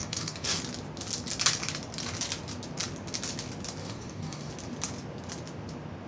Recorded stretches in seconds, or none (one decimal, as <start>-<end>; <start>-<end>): 0.6-3.8; 4.5-6.1